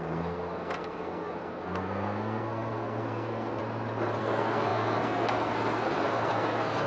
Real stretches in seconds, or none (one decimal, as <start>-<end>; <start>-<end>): 3.6-4.2